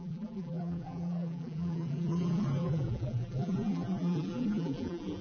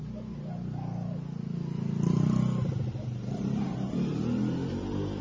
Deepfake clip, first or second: first